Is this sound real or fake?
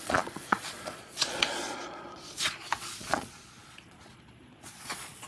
fake